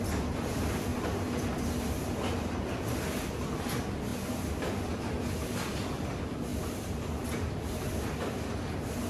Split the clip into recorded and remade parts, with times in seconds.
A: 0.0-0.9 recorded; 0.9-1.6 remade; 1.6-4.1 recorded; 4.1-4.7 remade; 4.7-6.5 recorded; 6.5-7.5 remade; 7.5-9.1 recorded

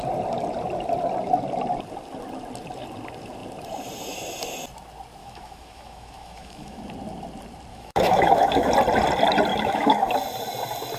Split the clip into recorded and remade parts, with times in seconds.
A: 0.0-5.2 recorded; 5.2-6.8 remade; 6.8-7.7 recorded; 7.7-8.7 remade; 8.7-9.5 recorded; 9.5-10.1 remade; 10.1-11.0 recorded

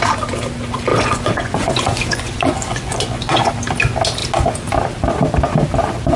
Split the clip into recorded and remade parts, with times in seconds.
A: 0.0-0.9 recorded; 0.9-3.5 remade; 3.5-6.2 recorded